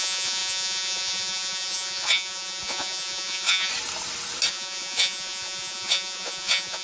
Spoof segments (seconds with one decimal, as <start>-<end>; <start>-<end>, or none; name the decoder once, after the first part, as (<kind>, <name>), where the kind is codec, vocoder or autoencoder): 0.0-3.7 (vocoder, Vocos); 4.5-6.8